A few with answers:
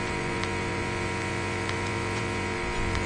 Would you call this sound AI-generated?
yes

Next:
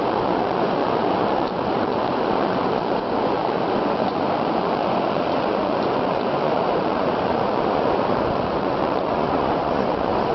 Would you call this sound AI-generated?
yes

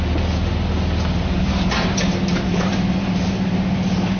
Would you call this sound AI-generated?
no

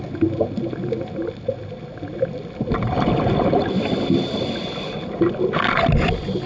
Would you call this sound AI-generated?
no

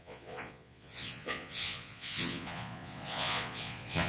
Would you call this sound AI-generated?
yes